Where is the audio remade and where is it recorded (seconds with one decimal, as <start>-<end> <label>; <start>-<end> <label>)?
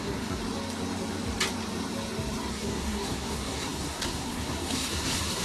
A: 0.0-0.4 remade; 0.4-2.5 recorded; 2.5-5.4 remade